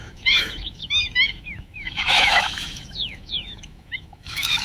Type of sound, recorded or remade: remade